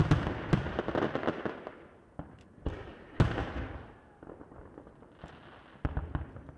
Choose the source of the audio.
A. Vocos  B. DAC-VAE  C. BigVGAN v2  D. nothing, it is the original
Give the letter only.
D